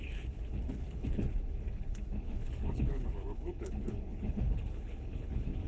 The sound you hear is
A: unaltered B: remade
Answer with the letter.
B